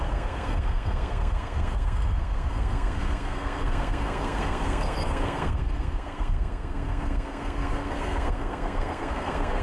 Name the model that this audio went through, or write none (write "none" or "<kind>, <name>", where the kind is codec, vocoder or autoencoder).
codec, SNAC